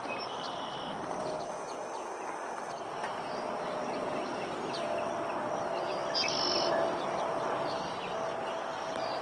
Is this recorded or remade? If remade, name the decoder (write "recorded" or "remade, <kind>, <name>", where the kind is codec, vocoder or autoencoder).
recorded